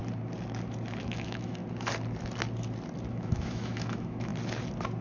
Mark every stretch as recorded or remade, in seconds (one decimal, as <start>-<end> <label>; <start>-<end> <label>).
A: 0.0-1.0 recorded; 1.0-1.6 remade; 1.6-3.1 recorded; 3.1-4.3 remade; 4.3-5.0 recorded